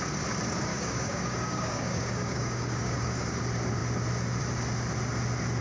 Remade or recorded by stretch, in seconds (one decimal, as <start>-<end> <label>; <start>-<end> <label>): 0.0-0.7 recorded; 0.7-3.4 remade; 3.4-5.6 recorded